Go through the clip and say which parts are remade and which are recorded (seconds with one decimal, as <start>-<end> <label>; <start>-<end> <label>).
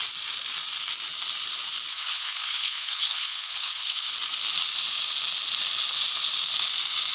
0.0-1.9 recorded; 1.9-4.1 remade; 4.1-7.1 recorded